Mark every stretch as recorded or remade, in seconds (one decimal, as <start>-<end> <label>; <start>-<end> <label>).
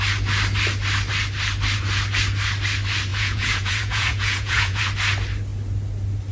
0.0-3.1 recorded; 3.1-4.8 remade; 4.8-6.3 recorded